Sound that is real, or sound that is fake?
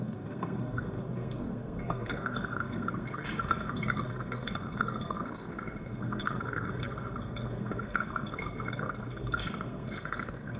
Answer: fake